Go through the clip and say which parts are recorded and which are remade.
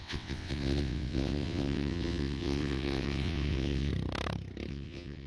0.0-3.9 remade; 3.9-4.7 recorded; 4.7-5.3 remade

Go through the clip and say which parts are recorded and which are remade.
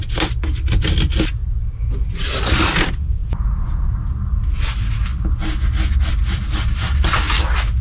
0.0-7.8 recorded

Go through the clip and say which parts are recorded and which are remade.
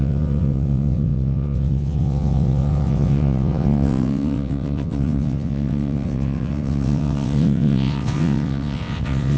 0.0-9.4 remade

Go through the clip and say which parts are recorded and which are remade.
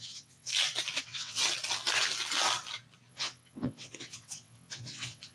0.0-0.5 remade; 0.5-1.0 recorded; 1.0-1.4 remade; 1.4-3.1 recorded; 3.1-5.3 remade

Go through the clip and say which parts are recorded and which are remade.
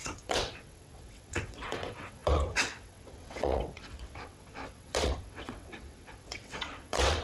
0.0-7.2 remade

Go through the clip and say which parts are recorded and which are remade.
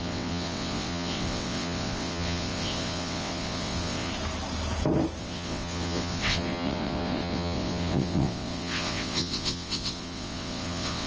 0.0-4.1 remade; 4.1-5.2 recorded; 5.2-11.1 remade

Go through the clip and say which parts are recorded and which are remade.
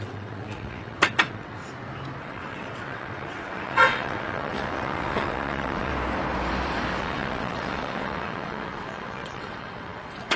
0.0-1.6 remade; 1.6-2.2 recorded; 2.2-5.9 remade; 5.9-7.0 recorded; 7.0-10.4 remade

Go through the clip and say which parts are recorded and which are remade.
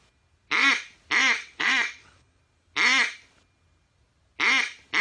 0.0-1.4 recorded; 1.4-2.4 remade; 2.4-5.0 recorded